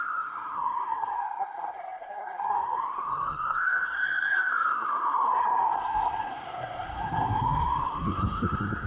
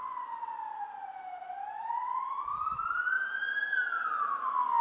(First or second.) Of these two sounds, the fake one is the first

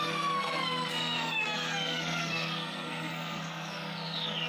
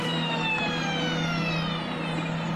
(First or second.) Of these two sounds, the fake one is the first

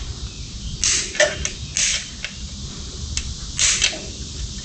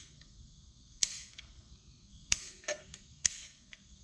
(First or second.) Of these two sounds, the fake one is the second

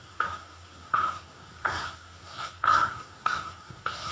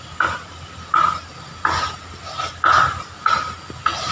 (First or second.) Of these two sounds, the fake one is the first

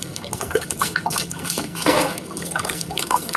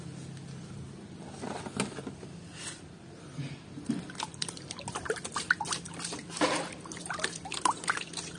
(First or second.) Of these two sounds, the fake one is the first